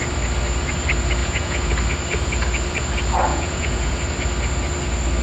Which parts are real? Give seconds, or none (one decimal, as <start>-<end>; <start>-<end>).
0.0-1.2; 1.7-3.3; 4.0-5.2